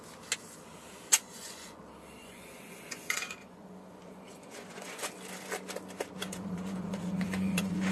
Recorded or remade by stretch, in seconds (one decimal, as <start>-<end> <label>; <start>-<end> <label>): 0.0-1.1 recorded; 1.1-1.8 remade; 1.8-2.2 recorded; 2.2-5.1 remade; 5.1-6.3 recorded; 6.3-7.9 remade